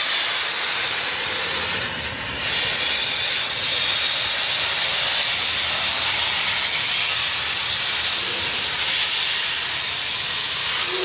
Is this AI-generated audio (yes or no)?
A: no